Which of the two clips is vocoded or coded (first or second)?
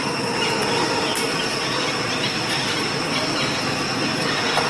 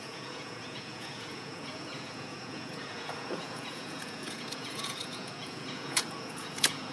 second